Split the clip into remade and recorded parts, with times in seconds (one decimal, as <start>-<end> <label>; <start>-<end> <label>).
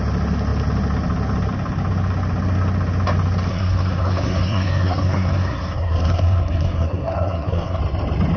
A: 0.0-3.5 recorded; 3.5-7.8 remade; 7.8-8.4 recorded